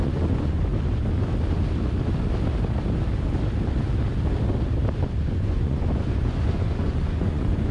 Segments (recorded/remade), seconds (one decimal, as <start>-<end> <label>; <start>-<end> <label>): 0.0-0.7 remade; 0.7-5.3 recorded; 5.3-7.7 remade